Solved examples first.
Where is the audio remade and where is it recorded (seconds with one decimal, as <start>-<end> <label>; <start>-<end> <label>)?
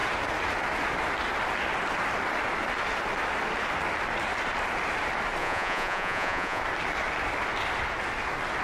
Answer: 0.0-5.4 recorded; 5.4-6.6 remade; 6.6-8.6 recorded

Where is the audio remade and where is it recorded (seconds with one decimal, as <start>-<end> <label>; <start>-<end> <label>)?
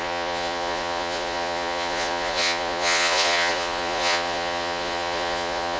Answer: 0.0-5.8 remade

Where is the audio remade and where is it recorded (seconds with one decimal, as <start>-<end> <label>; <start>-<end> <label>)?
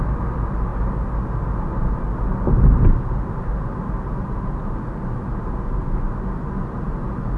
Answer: 0.0-7.4 recorded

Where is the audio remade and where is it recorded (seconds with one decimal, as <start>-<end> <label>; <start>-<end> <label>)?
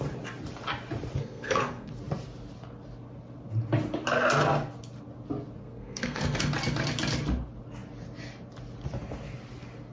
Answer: 0.0-1.2 recorded; 1.2-1.9 remade; 1.9-5.6 recorded; 5.6-6.4 remade; 6.4-9.9 recorded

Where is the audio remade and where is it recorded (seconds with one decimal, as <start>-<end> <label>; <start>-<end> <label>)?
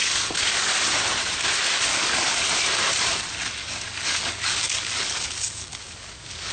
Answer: 0.0-0.7 remade; 0.7-1.9 recorded; 1.9-2.5 remade; 2.5-3.6 recorded; 3.6-6.5 remade